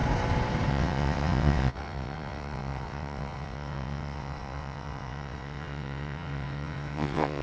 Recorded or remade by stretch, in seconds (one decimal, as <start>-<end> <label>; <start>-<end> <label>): 0.0-0.7 recorded; 0.7-7.4 remade